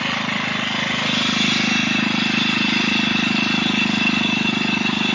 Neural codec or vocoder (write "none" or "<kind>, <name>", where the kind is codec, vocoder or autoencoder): none